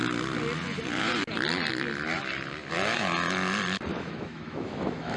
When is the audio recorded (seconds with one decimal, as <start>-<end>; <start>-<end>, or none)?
0.0-3.9